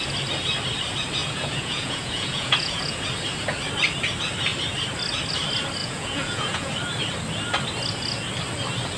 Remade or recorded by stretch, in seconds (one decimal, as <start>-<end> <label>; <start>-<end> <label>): 0.0-1.2 recorded; 1.2-3.1 remade; 3.1-5.8 recorded; 5.8-6.7 remade; 6.7-9.0 recorded